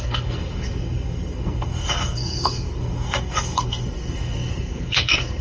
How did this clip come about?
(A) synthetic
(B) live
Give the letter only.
A